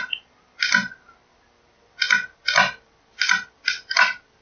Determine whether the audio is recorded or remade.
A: recorded